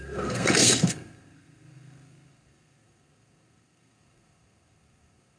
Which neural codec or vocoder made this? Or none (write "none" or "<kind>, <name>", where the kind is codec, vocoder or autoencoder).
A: codec, SNAC